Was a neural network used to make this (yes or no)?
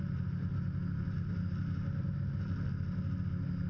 no